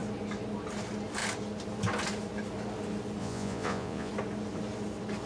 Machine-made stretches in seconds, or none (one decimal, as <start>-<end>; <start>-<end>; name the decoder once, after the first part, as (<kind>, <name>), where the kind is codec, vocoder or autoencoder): 3.2-4.1 (vocoder, Vocos)